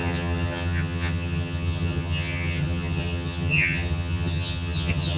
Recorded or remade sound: remade